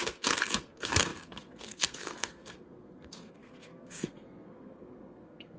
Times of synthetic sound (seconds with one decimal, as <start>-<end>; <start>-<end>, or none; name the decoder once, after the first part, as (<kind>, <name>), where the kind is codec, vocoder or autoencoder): 0.0-5.6 (codec, SNAC)